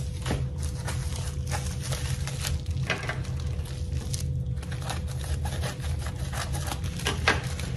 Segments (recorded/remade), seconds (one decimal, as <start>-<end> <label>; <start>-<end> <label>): 0.0-7.8 recorded